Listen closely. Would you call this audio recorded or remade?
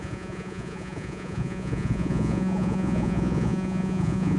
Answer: remade